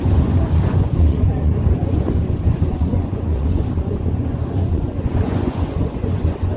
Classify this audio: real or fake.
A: fake